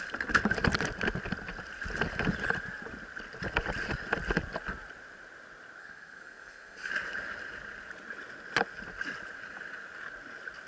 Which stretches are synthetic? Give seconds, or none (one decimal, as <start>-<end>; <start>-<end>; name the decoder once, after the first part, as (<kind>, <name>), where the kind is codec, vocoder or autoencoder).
5.8-6.9 (codec, SNAC)